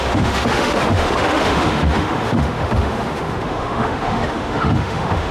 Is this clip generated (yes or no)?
yes